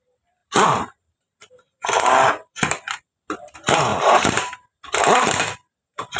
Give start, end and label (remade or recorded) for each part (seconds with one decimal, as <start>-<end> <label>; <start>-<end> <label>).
0.0-0.4 recorded; 0.4-1.5 remade; 1.5-3.9 recorded; 3.9-4.7 remade; 4.7-6.2 recorded